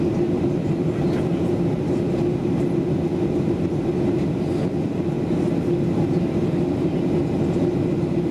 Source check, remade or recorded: recorded